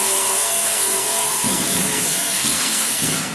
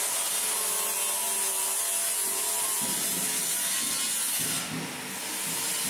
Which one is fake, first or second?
first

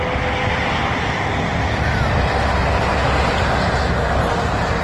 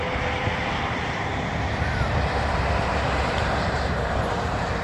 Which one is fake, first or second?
second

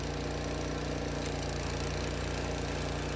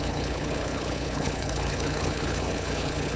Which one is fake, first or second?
second